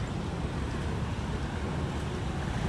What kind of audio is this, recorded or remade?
recorded